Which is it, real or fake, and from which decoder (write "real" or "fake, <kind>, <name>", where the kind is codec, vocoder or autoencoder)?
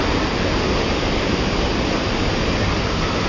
real